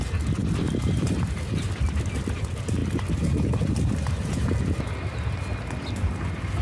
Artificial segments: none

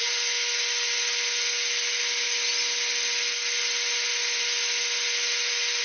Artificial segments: none

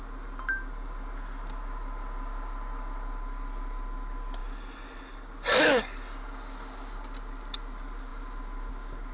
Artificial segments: none

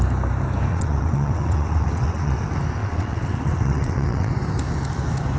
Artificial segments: 0.7-2.4 (vocoder, WaveNeXt); 2.8-4.3

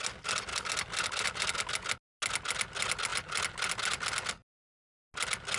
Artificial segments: none

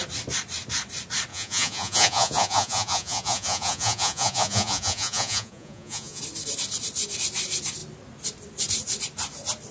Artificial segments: 1.3-6.2 (vocoder, Vocos)

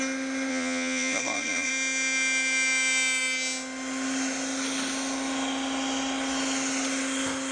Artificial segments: 0.5-1.7 (vocoder, Vocos)